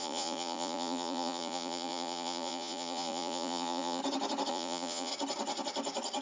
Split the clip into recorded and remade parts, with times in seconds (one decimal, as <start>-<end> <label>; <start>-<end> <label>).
0.0-4.0 remade; 4.0-4.5 recorded; 4.5-5.1 remade; 5.1-6.2 recorded

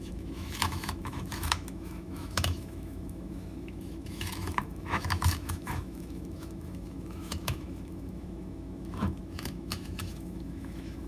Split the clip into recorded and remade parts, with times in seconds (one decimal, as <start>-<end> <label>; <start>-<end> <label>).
0.0-11.1 remade

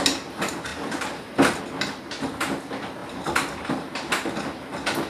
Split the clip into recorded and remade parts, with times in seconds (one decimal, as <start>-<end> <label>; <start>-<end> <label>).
0.0-0.7 recorded; 0.7-1.6 remade; 1.6-3.0 recorded; 3.0-4.1 remade; 4.1-5.1 recorded

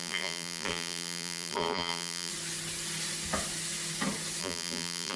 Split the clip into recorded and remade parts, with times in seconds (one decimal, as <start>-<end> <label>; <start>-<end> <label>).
0.0-2.3 remade; 2.3-4.4 recorded; 4.4-5.2 remade

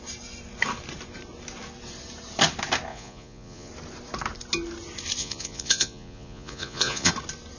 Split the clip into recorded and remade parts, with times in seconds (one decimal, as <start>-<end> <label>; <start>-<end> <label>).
0.0-2.9 recorded; 2.9-3.7 remade; 3.7-5.2 recorded; 5.2-7.1 remade; 7.1-7.6 recorded

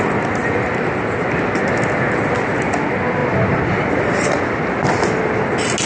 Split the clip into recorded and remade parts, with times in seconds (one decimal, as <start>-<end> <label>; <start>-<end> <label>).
0.0-5.9 recorded

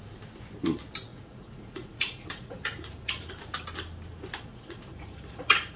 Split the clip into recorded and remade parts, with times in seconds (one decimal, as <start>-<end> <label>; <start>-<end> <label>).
0.0-1.1 recorded; 1.1-3.3 remade; 3.3-4.5 recorded; 4.5-5.8 remade